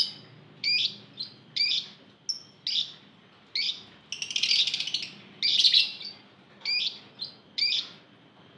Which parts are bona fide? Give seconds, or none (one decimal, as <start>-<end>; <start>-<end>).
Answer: 0.0-8.6